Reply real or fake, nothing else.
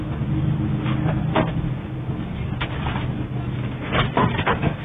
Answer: real